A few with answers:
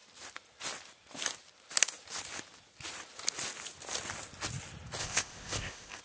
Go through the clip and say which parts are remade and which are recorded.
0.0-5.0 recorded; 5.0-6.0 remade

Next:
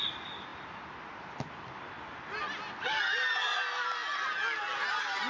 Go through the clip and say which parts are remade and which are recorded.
0.0-5.3 recorded

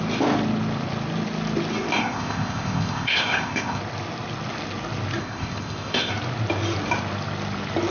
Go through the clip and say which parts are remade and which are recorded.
0.0-2.0 recorded; 2.0-3.8 remade; 3.8-5.2 recorded; 5.2-6.1 remade; 6.1-7.9 recorded

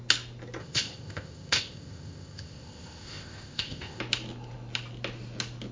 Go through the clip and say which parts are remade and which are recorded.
0.0-0.6 recorded; 0.6-4.0 remade; 4.0-5.7 recorded

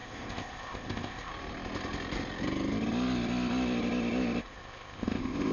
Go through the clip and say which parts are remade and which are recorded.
0.0-1.3 remade; 1.3-4.4 recorded; 4.4-5.5 remade

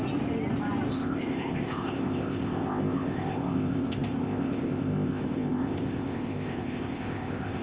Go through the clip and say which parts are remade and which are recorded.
0.0-0.9 recorded; 0.9-7.6 remade